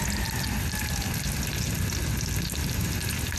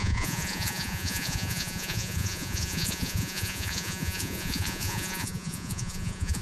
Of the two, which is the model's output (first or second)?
second